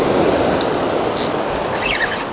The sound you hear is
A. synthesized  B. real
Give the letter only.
B